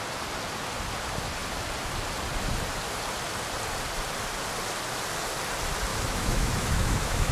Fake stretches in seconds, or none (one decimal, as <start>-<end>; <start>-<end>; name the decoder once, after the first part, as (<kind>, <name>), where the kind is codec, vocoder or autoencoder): 5.9-7.3 (autoencoder, DAC-VAE)